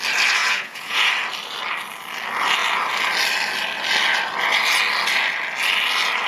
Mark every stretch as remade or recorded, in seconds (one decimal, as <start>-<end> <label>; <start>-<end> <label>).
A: 0.0-0.4 recorded; 0.4-1.1 remade; 1.1-6.3 recorded